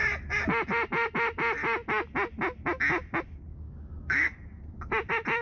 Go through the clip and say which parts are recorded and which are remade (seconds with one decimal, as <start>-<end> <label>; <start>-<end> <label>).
0.0-3.5 recorded; 3.5-4.6 remade; 4.6-5.4 recorded